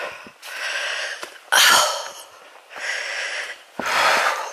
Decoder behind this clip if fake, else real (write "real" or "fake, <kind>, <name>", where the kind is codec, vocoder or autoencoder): real